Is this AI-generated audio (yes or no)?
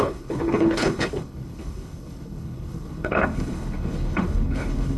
yes